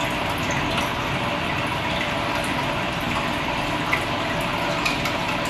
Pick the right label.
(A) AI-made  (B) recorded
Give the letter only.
B